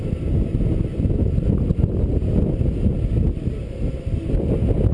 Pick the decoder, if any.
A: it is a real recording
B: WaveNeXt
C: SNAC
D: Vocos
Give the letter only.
A